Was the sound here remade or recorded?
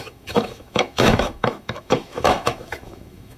remade